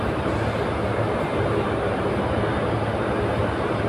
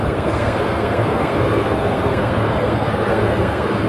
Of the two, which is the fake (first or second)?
second